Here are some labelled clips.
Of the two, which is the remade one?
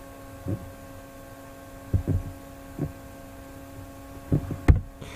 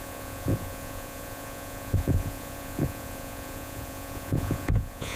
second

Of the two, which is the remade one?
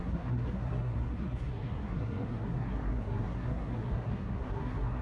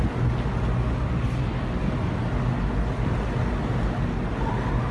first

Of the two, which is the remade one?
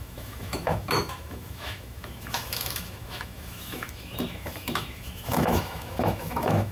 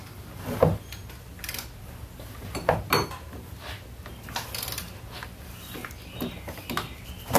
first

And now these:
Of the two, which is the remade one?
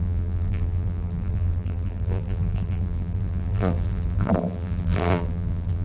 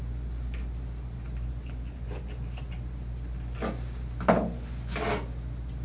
first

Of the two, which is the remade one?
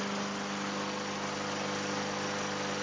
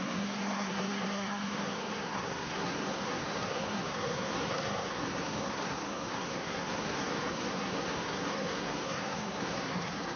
second